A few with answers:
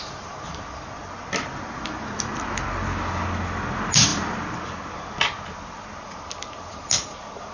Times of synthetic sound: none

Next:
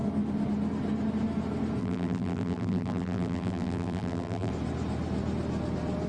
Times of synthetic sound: 1.8-4.5 (vocoder, BigVGAN v2)

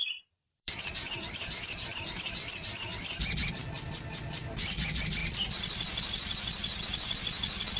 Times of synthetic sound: 0.0-3.9 (vocoder, BigVGAN v2)

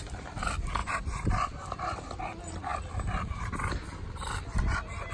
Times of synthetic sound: 0.8-2.0 (vocoder, BigVGAN v2)

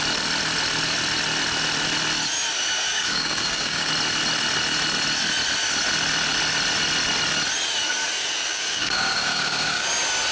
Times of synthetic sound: 2.9-3.9 (codec, DAC); 8.5-9.9

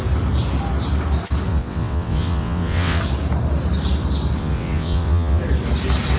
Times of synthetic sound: 1.5-3.0 (vocoder, WaveNeXt); 4.4-5.4

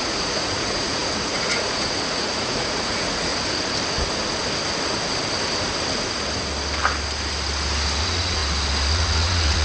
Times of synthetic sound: 0.0-3.3 (vocoder, Vocos); 8.0-8.4; 8.9-9.6

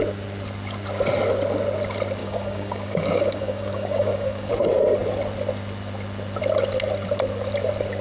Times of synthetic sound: 2.2-4.5 (codec, DAC)